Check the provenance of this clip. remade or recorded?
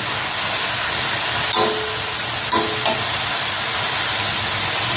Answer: recorded